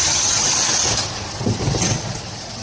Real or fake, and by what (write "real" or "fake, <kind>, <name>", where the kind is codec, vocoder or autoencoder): real